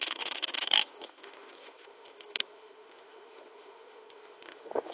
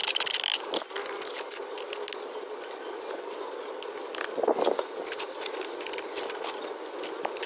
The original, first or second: second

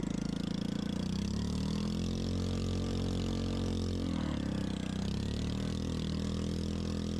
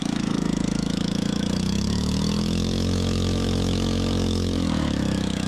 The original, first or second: first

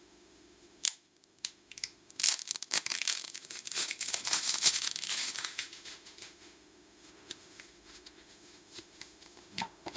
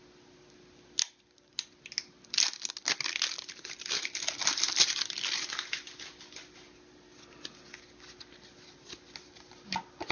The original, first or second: second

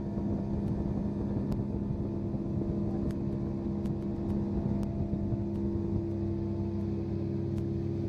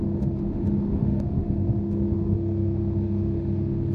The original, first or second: first